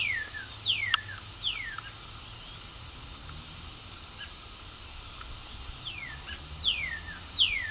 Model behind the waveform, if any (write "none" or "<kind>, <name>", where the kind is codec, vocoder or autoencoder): none